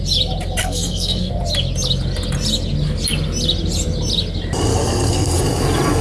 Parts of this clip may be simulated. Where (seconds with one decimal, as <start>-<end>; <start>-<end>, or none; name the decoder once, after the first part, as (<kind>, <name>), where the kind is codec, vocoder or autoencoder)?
0.6-1.3 (codec, SNAC); 4.7-5.4